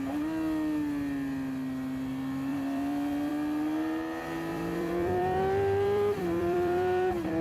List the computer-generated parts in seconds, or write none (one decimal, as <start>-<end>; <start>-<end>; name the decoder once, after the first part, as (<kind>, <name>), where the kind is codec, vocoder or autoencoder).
2.5-3.3 (vocoder, BigVGAN v2); 4.5-7.4